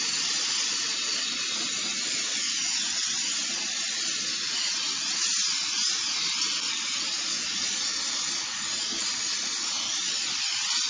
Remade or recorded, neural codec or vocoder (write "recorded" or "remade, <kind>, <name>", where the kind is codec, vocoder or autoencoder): recorded